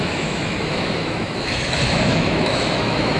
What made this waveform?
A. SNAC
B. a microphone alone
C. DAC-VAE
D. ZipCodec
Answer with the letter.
C